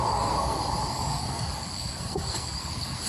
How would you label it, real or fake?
fake